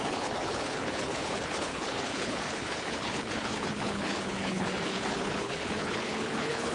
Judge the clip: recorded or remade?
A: remade